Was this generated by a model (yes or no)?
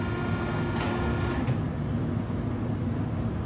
no